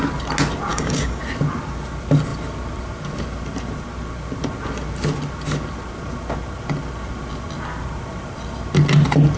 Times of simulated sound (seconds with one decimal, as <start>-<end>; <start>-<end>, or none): 0.7-1.2